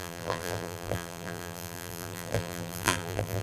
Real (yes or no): no